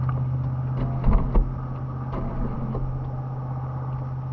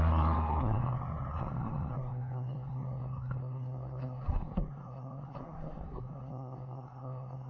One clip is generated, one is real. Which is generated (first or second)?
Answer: second